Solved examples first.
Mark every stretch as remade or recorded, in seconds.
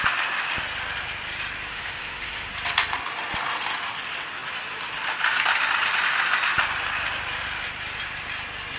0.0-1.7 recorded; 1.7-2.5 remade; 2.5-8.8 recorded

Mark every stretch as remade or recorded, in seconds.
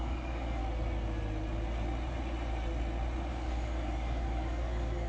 0.0-0.6 remade; 0.6-3.3 recorded; 3.3-5.1 remade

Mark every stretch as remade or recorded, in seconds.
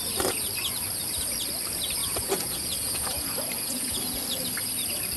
0.0-2.0 recorded; 2.0-4.0 remade; 4.0-5.2 recorded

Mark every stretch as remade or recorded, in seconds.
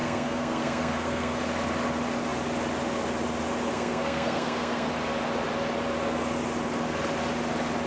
0.0-1.4 remade; 1.4-3.7 recorded; 3.7-4.9 remade; 4.9-7.9 recorded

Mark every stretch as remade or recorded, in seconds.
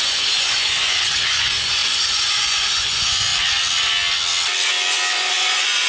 0.0-3.3 remade; 3.3-5.1 recorded; 5.1-5.9 remade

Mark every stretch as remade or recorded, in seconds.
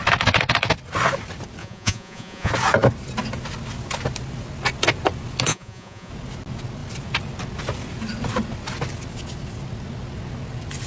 0.0-1.6 recorded; 1.6-2.5 remade; 2.5-5.5 recorded; 5.5-6.1 remade; 6.1-10.9 recorded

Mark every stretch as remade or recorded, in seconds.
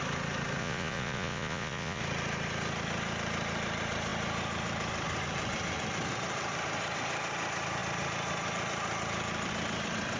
0.0-0.6 recorded; 0.6-2.0 remade; 2.0-10.2 recorded